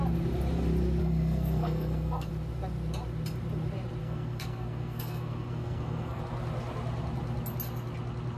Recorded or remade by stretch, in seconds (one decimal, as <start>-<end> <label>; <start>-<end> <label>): 0.0-1.0 recorded; 1.0-2.3 remade; 2.3-4.0 recorded; 4.0-6.2 remade; 6.2-8.4 recorded